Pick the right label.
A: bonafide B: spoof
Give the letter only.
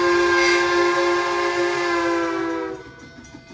A